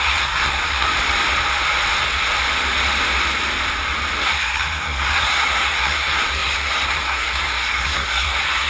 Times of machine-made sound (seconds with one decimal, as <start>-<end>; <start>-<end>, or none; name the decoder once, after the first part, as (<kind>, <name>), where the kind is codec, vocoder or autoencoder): 0.0-0.9 (codec, SNAC); 4.2-8.7